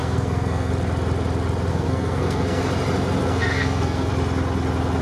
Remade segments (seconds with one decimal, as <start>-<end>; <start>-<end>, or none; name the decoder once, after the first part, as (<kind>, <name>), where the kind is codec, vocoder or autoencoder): 0.0-0.7 (codec, SNAC); 1.7-2.6; 3.2-4.1